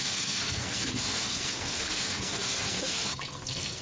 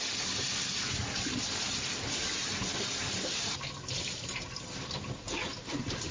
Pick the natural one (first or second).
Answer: second